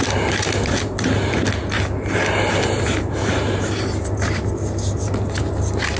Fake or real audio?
real